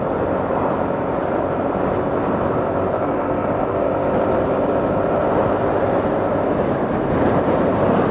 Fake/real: fake